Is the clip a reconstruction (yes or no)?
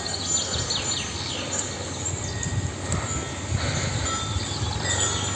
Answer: no